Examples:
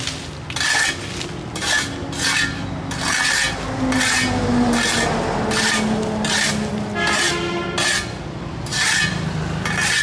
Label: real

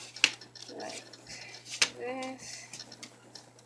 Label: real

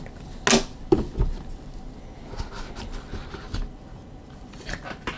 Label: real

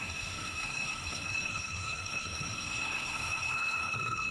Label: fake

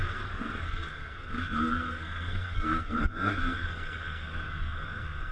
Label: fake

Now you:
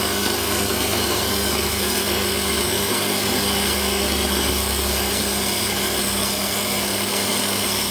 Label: fake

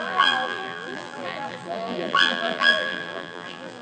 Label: fake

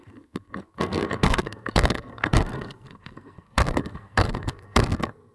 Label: fake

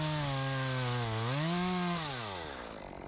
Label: real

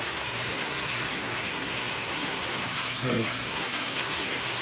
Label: fake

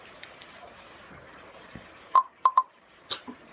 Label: fake